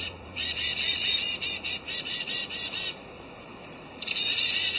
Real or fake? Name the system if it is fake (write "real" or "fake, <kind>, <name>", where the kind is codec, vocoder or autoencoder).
fake, vocoder, Vocos